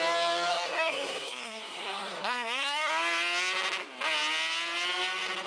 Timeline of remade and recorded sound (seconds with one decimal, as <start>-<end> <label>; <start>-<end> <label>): 0.0-0.5 recorded; 0.5-2.9 remade; 2.9-5.5 recorded

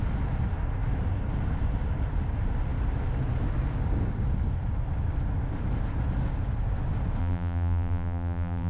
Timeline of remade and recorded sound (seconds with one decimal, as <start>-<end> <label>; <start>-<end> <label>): 0.0-7.2 recorded; 7.2-8.7 remade

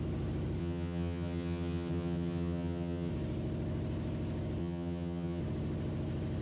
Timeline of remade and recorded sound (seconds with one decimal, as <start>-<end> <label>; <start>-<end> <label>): 0.0-0.6 recorded; 0.6-3.1 remade; 3.1-4.6 recorded; 4.6-5.4 remade; 5.4-6.4 recorded